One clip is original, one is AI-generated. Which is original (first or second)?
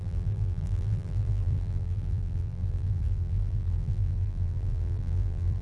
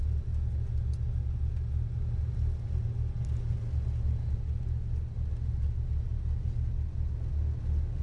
second